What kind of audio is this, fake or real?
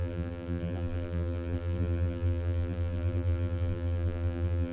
fake